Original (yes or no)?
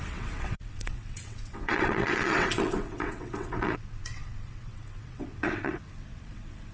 no